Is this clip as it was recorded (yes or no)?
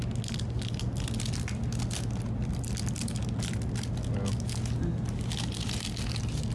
yes